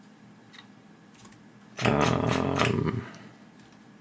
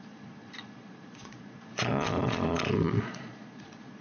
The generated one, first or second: second